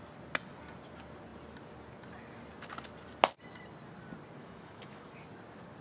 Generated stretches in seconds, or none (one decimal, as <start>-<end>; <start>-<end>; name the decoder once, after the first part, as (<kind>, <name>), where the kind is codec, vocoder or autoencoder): 4.4-5.1 (autoencoder, DAC-VAE)